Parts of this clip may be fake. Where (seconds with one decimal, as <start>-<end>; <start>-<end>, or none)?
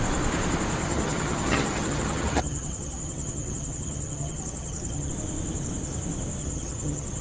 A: 0.8-5.1; 6.4-7.2